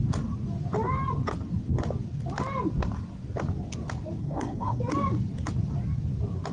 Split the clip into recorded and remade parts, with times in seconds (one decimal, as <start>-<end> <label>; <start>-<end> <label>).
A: 0.0-4.2 recorded; 4.2-4.8 remade; 4.8-6.5 recorded